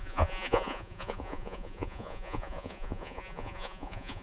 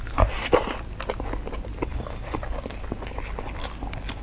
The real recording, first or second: second